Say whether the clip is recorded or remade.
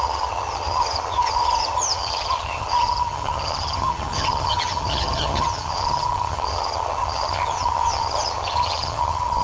remade